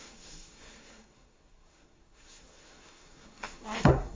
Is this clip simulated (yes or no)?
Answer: yes